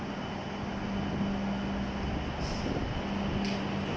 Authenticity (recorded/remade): recorded